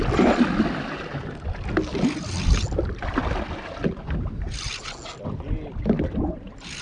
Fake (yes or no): no